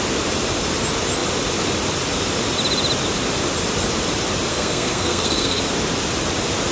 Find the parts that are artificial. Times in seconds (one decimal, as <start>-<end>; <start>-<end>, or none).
4.5-5.6